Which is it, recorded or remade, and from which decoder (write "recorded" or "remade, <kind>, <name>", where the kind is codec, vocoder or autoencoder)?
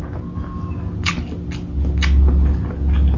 recorded